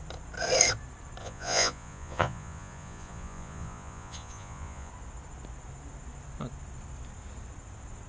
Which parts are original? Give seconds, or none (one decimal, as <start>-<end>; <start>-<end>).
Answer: 0.0-1.2; 4.9-8.1